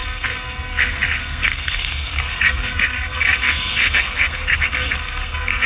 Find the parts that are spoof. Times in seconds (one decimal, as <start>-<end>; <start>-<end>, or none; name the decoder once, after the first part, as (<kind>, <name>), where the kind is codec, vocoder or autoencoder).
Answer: 0.0-5.7 (codec, SNAC)